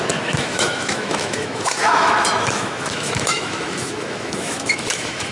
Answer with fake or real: fake